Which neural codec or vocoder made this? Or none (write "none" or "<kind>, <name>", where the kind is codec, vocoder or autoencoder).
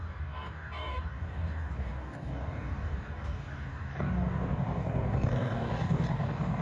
codec, DAC